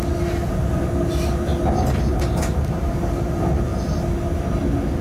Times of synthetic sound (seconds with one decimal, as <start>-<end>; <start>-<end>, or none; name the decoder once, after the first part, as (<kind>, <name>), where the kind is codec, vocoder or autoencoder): none

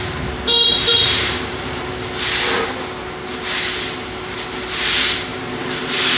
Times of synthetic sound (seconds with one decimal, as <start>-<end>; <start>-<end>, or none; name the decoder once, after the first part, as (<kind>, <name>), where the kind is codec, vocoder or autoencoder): 0.9-1.9 (vocoder, BigVGAN v2); 5.3-6.2

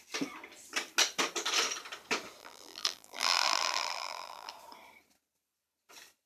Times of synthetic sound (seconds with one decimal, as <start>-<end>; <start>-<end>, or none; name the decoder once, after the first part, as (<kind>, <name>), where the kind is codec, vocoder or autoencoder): 2.4-4.5 (vocoder, BigVGAN v2)